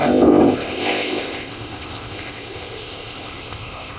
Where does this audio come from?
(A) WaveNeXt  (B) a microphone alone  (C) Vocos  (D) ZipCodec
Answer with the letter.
D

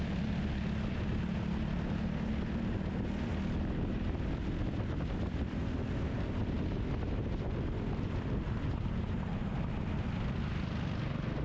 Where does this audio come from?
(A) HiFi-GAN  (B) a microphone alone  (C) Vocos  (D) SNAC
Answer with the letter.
B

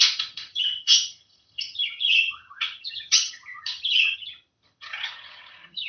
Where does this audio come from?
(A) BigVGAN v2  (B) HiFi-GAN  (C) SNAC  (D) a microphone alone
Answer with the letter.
B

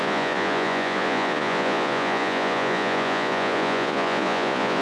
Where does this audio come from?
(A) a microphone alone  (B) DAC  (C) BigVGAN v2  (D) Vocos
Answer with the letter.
D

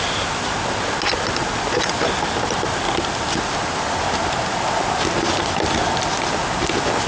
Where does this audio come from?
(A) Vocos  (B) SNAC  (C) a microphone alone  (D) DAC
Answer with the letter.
C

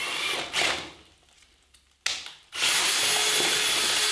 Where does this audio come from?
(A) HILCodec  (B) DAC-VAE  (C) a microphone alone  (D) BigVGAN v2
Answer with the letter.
C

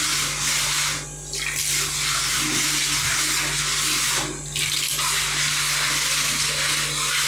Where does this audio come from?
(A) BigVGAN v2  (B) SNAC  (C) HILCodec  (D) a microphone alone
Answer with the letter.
D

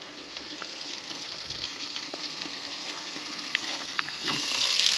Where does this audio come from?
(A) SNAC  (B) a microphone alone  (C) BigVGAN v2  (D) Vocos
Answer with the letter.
A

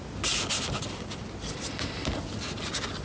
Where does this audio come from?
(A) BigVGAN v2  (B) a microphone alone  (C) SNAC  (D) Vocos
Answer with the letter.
B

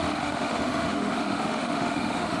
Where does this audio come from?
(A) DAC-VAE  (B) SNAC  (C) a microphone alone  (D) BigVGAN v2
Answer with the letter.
A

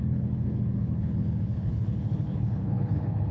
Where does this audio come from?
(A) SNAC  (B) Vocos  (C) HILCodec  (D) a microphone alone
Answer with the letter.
C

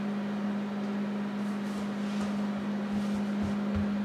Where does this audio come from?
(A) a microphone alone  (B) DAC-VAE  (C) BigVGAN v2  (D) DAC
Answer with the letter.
A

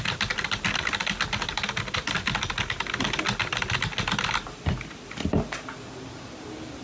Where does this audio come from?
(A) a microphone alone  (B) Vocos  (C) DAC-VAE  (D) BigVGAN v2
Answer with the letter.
A